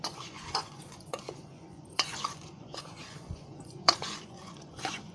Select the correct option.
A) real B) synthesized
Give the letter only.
B